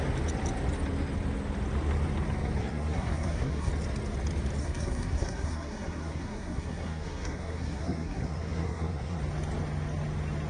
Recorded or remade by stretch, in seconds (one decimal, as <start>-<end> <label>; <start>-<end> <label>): 0.0-2.6 recorded; 2.6-3.7 remade; 3.7-4.6 recorded; 4.6-9.2 remade; 9.2-10.5 recorded